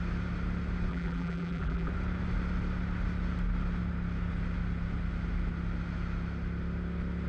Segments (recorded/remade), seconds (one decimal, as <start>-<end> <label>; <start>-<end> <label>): 0.0-0.9 recorded; 0.9-1.9 remade; 1.9-7.3 recorded